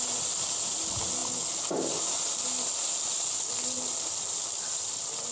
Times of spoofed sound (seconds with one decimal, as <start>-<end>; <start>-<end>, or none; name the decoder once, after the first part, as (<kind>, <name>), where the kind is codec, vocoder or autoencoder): none